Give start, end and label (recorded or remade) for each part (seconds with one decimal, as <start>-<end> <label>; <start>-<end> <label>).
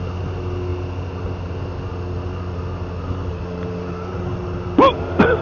0.0-5.4 recorded